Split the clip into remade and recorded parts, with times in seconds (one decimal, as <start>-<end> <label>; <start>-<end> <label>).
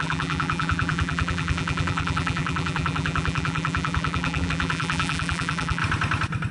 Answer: 0.0-5.8 remade; 5.8-6.5 recorded